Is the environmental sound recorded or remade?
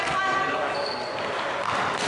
recorded